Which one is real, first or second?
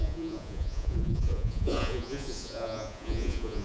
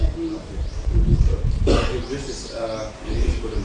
second